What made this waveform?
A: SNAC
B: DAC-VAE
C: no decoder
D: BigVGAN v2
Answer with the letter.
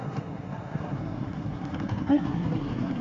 A